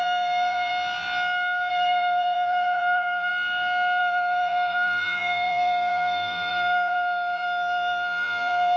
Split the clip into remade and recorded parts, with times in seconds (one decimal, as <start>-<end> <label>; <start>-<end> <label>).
0.0-0.7 remade; 0.7-1.7 recorded; 1.7-3.3 remade; 3.3-4.0 recorded; 4.0-8.8 remade